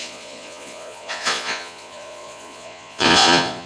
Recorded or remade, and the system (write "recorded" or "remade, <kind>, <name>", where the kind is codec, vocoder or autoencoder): remade, vocoder, Vocos